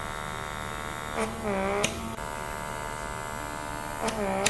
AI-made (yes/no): no